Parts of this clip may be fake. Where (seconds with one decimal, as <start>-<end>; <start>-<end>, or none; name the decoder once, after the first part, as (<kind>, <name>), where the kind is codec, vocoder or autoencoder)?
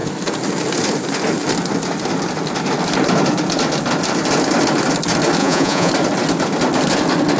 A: 5.4-5.9 (vocoder, Vocos)